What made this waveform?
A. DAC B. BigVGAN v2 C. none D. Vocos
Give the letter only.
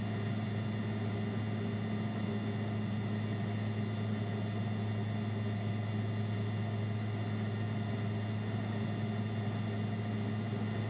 C